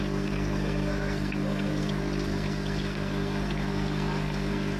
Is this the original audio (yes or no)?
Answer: no